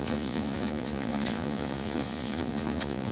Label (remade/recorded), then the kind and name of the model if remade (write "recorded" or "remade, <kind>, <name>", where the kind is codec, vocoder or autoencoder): remade, vocoder, Vocos